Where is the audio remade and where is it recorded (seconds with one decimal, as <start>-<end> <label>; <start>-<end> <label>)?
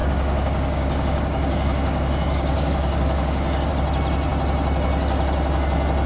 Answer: 0.0-3.7 remade; 3.7-6.1 recorded